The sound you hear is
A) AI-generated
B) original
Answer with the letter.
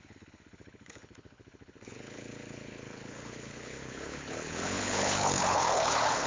A